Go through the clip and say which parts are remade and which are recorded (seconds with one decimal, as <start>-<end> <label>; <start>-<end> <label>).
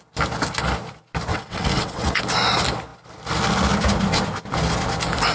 0.0-1.3 recorded; 1.3-2.2 remade; 2.2-5.3 recorded